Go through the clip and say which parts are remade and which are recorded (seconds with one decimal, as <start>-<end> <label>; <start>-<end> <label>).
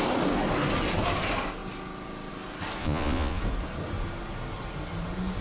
0.0-2.8 recorded; 2.8-3.4 remade; 3.4-5.4 recorded